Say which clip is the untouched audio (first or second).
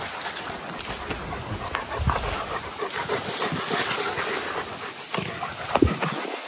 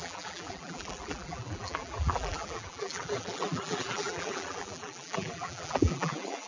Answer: first